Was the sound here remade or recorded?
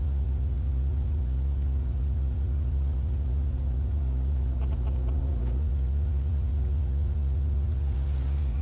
remade